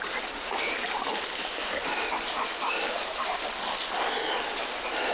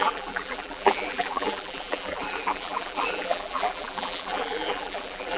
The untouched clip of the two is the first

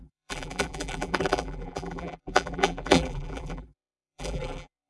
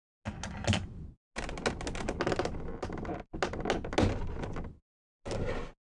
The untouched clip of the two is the second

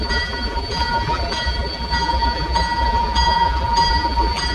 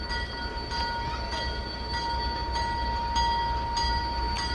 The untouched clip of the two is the second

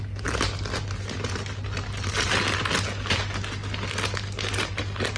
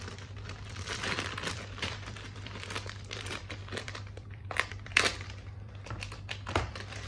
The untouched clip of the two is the first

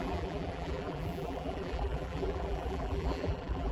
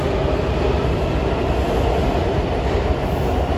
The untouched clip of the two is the second